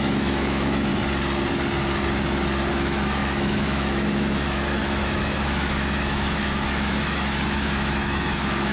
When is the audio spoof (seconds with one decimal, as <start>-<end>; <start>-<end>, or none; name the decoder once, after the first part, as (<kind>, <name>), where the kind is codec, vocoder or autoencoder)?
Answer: 0.0-0.9 (autoencoder, DAC-VAE); 2.7-8.7

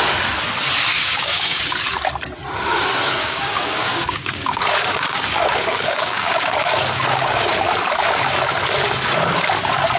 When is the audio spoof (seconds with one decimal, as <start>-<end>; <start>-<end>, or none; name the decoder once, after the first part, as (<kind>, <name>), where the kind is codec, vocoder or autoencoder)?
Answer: 1.0-1.6 (codec, DAC); 3.2-7.6

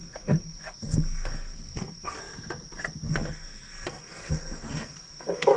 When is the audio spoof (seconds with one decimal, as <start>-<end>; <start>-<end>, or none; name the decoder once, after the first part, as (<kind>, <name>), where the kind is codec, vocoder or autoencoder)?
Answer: 0.0-2.2 (codec, SNAC); 3.1-5.6

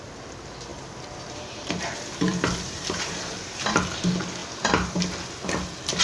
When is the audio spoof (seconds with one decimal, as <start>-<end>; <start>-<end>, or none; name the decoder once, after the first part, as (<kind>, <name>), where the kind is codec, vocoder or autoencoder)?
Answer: 0.7-3.8 (vocoder, BigVGAN v2)

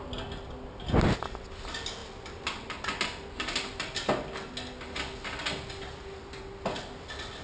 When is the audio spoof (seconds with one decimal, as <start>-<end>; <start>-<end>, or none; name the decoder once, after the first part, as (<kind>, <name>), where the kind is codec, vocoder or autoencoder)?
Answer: none